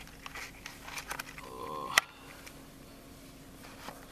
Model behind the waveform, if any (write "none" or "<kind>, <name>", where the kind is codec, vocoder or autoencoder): none